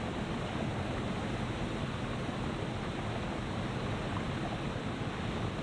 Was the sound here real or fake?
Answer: real